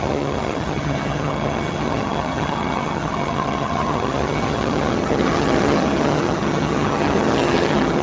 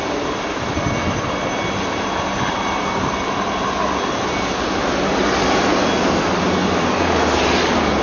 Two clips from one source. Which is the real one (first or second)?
second